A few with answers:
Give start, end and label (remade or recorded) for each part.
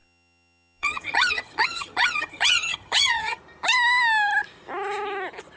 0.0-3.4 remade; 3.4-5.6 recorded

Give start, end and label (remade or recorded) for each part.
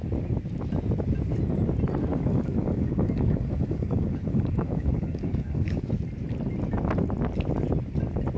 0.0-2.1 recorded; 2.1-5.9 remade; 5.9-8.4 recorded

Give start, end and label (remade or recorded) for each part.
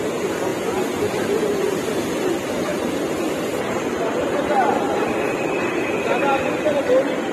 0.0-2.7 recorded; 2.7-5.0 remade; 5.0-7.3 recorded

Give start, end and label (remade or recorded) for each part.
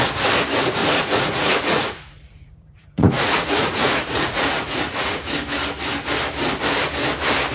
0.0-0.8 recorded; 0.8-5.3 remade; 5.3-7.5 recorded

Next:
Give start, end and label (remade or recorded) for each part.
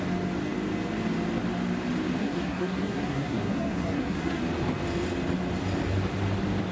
0.0-2.2 recorded; 2.2-4.4 remade; 4.4-6.7 recorded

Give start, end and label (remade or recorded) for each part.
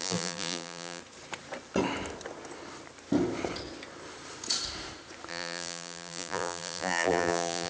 0.0-1.0 remade; 1.0-5.3 recorded; 5.3-7.7 remade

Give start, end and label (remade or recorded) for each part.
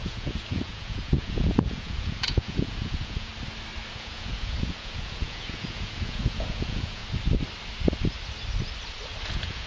0.0-3.3 remade; 3.3-3.9 recorded; 3.9-7.0 remade; 7.0-9.2 recorded; 9.2-9.7 remade